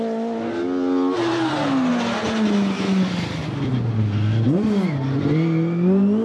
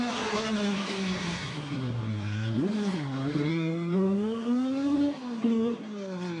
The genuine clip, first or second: first